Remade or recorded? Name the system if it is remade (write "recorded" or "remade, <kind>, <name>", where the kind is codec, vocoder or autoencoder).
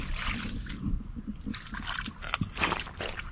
remade, vocoder, BigVGAN v2